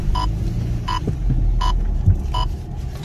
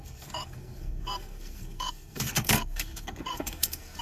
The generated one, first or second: second